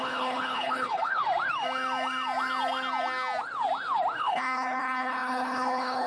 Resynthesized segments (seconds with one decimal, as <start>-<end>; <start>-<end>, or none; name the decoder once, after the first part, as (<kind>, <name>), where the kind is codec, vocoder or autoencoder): 0.0-1.2 (codec, HILCodec); 4.2-6.1